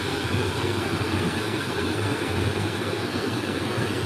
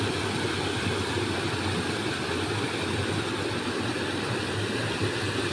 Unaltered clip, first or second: second